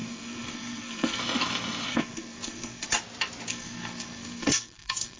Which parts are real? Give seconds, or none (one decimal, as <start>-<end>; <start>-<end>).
1.2-1.9; 2.9-3.5